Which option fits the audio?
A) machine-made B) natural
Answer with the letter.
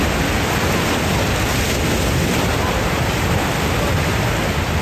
B